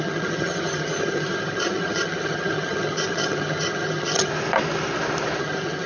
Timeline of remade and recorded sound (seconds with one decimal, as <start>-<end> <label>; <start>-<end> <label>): 0.0-4.3 remade; 4.3-5.4 recorded; 5.4-5.9 remade